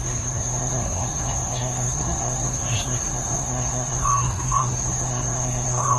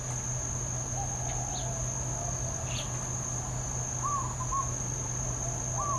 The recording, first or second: second